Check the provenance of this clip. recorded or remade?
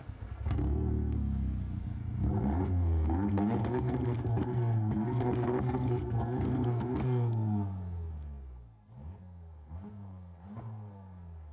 remade